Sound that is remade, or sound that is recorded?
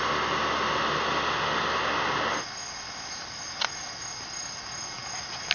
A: recorded